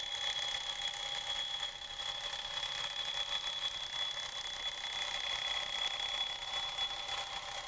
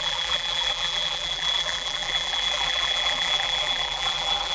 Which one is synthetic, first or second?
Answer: second